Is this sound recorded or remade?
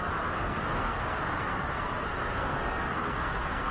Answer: remade